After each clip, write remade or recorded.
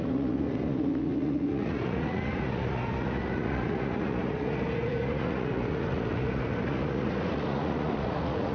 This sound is remade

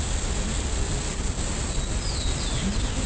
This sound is recorded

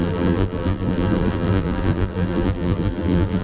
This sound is remade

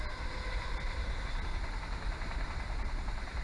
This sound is recorded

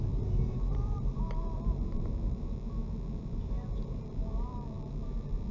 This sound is remade